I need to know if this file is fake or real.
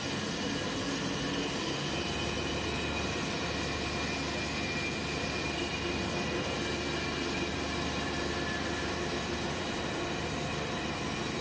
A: real